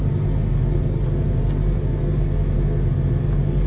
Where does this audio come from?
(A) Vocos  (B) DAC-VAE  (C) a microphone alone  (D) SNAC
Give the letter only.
C